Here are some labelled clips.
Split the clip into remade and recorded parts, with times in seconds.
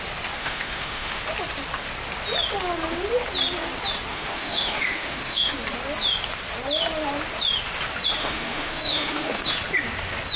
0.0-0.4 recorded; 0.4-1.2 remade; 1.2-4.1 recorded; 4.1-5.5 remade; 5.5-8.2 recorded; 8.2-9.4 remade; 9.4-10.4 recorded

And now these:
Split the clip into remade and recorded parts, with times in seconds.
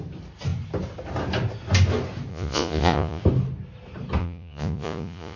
0.0-2.3 recorded; 2.3-3.2 remade; 3.2-4.2 recorded; 4.2-5.4 remade